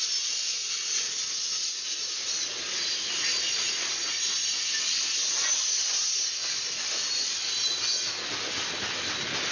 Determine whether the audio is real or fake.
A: real